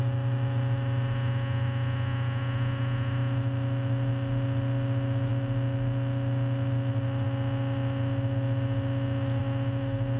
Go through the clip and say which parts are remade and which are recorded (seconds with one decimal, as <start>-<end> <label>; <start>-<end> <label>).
0.0-10.2 recorded